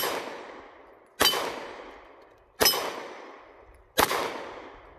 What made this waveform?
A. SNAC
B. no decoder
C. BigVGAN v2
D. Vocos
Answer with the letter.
B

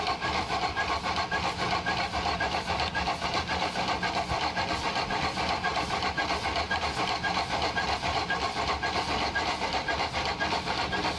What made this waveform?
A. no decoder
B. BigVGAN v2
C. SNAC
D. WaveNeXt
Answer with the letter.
A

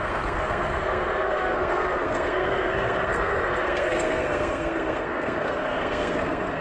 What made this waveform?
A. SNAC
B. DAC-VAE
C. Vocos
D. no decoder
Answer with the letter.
A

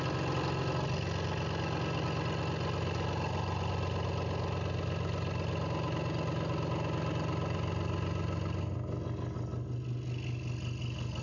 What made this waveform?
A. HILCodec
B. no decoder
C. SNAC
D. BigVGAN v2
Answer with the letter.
B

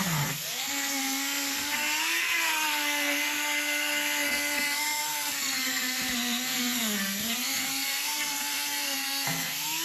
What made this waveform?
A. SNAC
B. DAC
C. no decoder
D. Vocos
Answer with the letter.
A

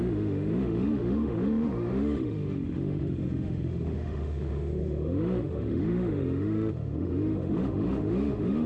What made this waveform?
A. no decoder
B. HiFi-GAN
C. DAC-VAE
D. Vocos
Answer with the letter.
C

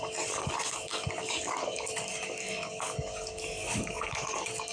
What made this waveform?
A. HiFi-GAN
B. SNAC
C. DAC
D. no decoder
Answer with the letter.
C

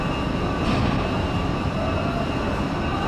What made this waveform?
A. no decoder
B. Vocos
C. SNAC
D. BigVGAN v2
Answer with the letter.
A